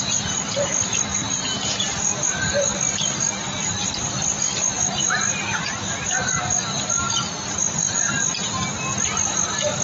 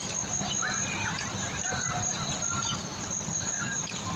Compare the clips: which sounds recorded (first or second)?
first